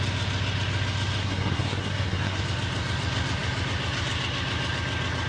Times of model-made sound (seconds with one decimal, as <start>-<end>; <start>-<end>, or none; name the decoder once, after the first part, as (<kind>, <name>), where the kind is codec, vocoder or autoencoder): 1.2-2.4 (codec, SNAC)